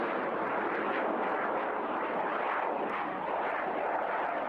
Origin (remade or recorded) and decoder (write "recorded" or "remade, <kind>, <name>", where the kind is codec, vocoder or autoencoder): remade, vocoder, BigVGAN v2